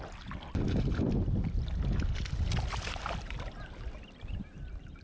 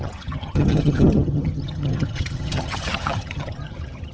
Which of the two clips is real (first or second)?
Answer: first